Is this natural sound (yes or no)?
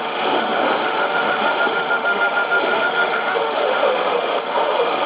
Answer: no